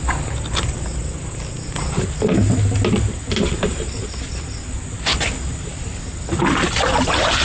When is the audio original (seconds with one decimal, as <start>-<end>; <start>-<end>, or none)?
0.0-7.4